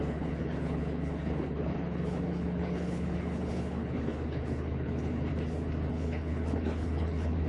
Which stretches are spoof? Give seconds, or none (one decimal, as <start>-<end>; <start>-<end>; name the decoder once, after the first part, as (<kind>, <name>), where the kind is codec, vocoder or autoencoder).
0.0-5.3 (codec, HILCodec); 5.9-7.5

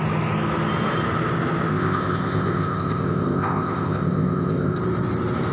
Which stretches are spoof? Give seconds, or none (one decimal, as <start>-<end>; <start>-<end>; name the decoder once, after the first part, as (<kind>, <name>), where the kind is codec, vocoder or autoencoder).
1.7-4.8 (codec, ZipCodec)

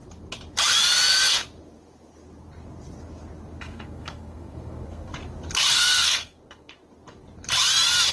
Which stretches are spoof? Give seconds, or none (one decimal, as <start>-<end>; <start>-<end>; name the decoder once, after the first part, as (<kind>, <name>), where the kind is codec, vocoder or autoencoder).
3.6-5.1 (codec, SNAC); 5.7-6.7

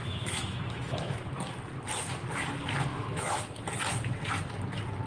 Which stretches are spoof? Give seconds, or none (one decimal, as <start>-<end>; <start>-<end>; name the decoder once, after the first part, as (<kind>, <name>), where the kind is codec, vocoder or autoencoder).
0.0-1.2 (autoencoder, DAC-VAE); 2.9-3.4